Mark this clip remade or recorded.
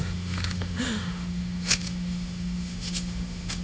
remade